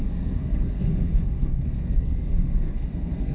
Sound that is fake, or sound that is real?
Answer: fake